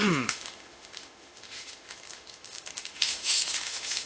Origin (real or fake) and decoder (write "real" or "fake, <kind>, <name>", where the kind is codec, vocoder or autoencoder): fake, autoencoder, DAC-VAE